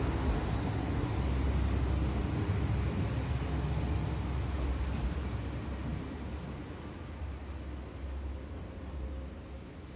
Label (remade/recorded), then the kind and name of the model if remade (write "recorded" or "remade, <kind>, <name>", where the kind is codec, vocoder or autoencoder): recorded